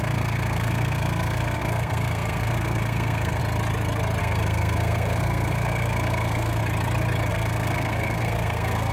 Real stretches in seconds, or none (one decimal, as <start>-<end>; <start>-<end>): 3.4-4.2; 6.6-7.3